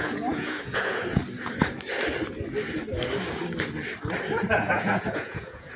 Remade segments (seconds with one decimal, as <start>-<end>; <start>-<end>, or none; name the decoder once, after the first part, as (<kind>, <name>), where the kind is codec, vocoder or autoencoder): 0.0-1.2 (vocoder, Vocos); 4.5-5.8